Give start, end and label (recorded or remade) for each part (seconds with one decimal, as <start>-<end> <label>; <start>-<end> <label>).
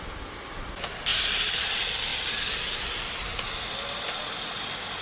0.0-5.0 recorded